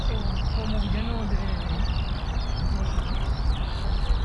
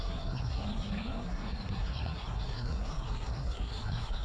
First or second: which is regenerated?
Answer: second